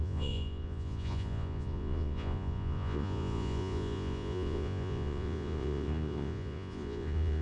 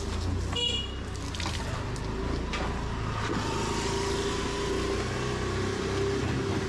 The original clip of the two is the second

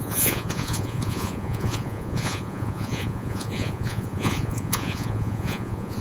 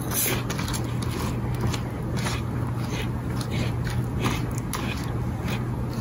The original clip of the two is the second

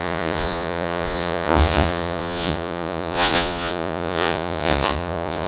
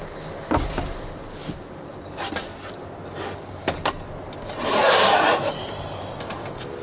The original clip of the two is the second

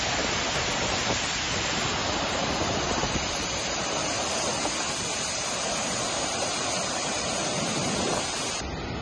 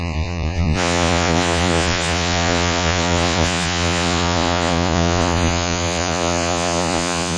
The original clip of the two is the first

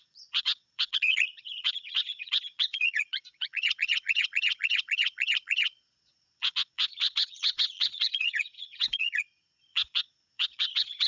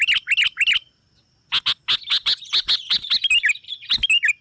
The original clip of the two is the second